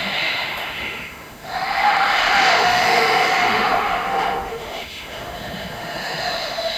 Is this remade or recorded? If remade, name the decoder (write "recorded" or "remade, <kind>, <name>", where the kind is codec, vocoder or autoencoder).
remade, autoencoder, DAC-VAE